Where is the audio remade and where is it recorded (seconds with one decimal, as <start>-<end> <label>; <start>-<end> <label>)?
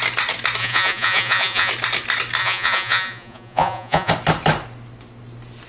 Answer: 0.0-0.6 recorded; 0.6-1.7 remade; 1.7-2.4 recorded; 2.4-4.1 remade; 4.1-5.7 recorded